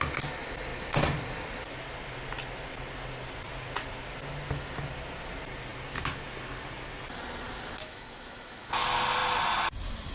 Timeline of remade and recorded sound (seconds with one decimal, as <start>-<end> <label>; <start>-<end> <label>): 0.0-7.8 recorded; 7.8-8.7 remade; 8.7-10.1 recorded